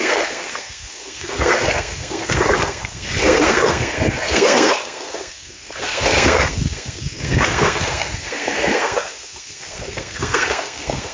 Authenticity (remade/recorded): remade